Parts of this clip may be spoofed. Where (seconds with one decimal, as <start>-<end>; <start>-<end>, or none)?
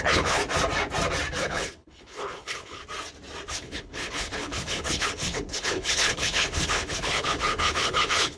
0.0-0.4; 1.4-2.8; 3.5-8.4